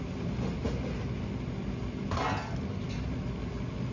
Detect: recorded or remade recorded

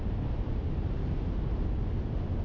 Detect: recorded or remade recorded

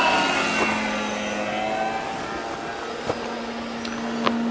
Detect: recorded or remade recorded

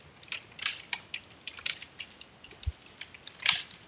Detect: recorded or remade recorded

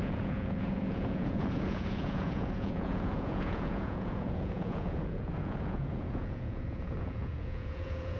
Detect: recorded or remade remade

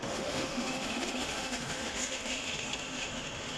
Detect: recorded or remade remade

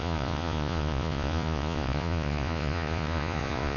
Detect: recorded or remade remade